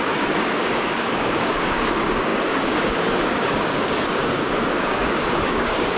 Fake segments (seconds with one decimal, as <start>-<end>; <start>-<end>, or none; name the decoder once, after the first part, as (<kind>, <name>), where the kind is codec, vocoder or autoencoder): 0.0-6.0 (codec, DAC)